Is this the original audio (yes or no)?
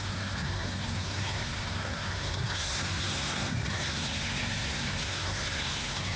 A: no